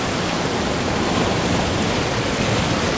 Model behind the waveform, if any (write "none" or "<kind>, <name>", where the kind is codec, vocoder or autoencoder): none